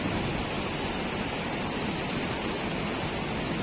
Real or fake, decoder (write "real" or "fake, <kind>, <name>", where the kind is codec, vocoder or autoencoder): real